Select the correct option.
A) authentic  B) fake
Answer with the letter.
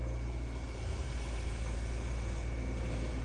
A